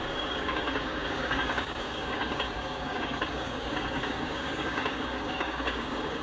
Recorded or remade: remade